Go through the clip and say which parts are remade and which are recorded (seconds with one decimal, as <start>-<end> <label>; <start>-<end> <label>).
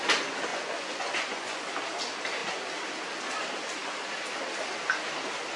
0.0-0.5 recorded; 0.5-1.6 remade; 1.6-5.6 recorded